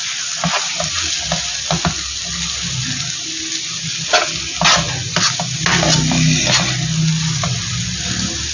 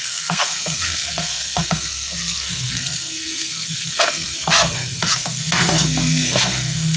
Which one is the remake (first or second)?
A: second